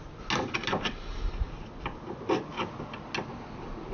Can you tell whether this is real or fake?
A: real